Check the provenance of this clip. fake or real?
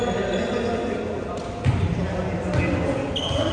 real